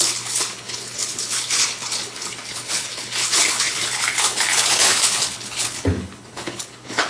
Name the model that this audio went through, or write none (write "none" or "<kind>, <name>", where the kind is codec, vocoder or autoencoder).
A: codec, HILCodec